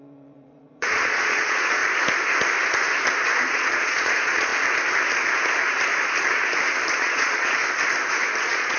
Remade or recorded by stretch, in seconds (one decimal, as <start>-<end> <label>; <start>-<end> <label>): 0.0-1.8 remade; 1.8-3.4 recorded; 3.4-4.5 remade; 4.5-6.9 recorded; 6.9-7.6 remade; 7.6-8.4 recorded; 8.4-8.8 remade